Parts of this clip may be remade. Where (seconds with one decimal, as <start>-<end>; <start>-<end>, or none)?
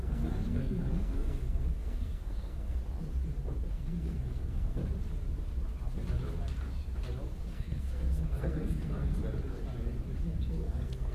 0.0-2.8; 3.7-4.8; 7.4-9.2; 10.5-11.1